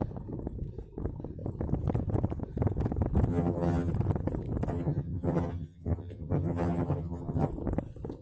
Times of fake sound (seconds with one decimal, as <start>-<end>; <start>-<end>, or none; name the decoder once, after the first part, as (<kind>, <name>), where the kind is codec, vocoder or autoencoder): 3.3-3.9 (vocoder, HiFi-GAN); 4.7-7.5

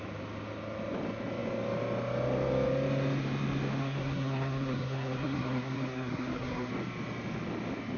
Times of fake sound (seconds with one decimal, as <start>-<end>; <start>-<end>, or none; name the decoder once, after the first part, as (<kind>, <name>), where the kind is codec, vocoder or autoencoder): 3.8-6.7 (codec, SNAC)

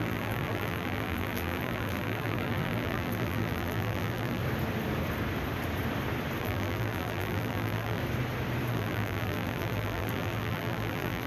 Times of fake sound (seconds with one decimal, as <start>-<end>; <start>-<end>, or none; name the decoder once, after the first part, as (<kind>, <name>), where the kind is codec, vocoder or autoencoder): 0.0-4.4 (vocoder, BigVGAN v2); 6.4-8.0; 8.7-11.3